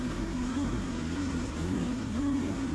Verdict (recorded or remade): remade